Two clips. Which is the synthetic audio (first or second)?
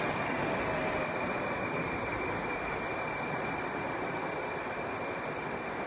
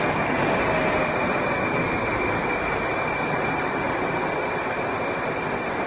first